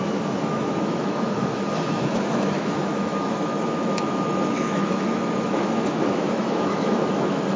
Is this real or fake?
fake